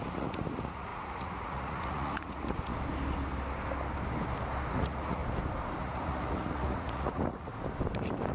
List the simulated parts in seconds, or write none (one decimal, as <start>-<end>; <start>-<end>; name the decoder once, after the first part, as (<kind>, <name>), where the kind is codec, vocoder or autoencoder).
0.0-2.7 (vocoder, Vocos); 4.7-5.2; 5.8-7.5